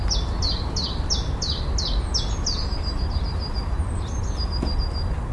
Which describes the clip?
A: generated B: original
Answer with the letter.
B